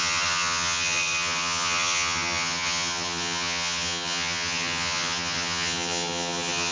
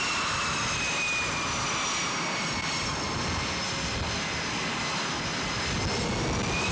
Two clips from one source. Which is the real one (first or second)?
second